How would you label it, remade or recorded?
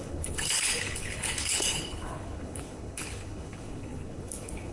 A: remade